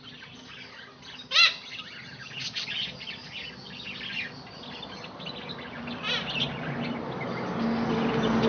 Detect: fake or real real